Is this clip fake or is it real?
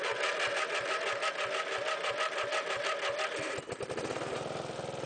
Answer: real